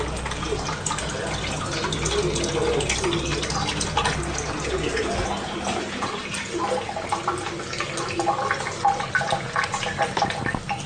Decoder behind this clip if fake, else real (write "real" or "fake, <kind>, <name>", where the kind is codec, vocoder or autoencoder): real